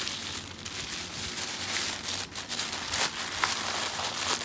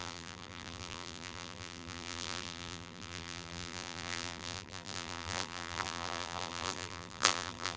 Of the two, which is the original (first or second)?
first